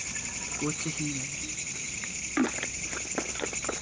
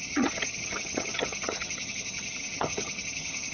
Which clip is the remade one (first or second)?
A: second